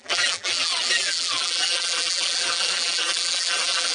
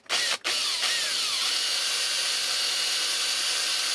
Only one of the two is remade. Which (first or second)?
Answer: first